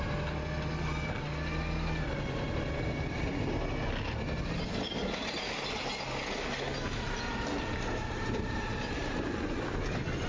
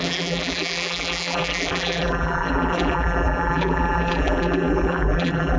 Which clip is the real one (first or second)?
first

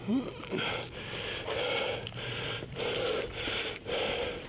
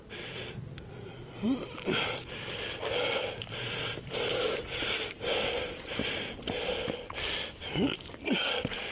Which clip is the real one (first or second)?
first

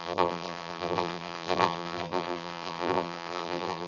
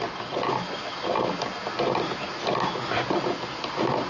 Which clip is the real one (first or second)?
second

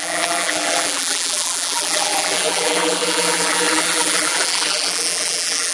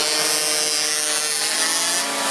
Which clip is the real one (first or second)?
second